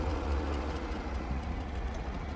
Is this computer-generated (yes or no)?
yes